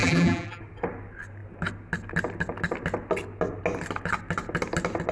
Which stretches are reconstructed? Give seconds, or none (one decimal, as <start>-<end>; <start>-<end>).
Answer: 0.0-0.6